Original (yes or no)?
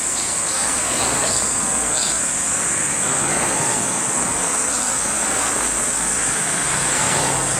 no